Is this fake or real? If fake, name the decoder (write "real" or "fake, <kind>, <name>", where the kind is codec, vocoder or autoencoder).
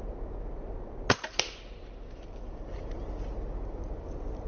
real